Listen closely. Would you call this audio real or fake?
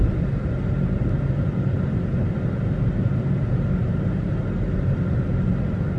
real